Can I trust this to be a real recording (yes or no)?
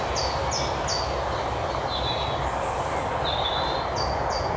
yes